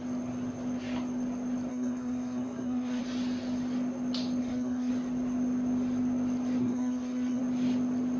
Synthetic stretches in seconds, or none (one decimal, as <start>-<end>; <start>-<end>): 1.7-3.0; 4.4-4.9; 6.6-7.4